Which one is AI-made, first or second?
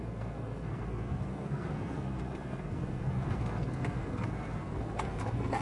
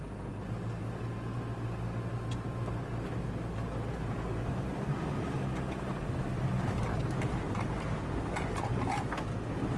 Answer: first